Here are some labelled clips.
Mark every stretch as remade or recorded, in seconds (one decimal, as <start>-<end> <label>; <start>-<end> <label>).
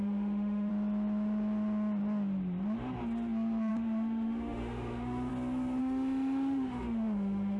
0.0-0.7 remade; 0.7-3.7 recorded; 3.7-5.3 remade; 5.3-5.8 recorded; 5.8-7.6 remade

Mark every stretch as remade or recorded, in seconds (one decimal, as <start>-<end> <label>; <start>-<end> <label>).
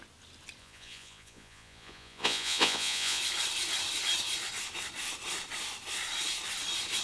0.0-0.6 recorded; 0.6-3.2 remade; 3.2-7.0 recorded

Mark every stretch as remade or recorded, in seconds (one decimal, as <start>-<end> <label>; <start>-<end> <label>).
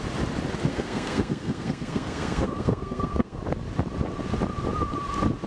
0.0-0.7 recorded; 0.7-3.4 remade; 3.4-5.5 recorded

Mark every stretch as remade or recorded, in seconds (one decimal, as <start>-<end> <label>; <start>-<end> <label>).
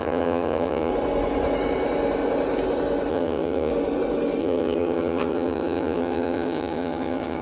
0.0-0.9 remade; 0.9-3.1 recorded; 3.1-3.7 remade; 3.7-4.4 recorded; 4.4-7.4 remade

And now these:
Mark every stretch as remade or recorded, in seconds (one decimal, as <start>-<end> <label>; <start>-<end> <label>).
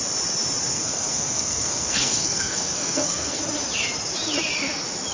0.0-0.7 recorded; 0.7-3.4 remade; 3.4-5.1 recorded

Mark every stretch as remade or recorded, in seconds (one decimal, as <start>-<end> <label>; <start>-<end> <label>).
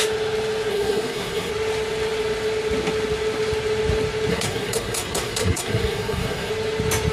0.0-0.7 recorded; 0.7-1.5 remade; 1.5-4.3 recorded; 4.3-6.5 remade; 6.5-7.1 recorded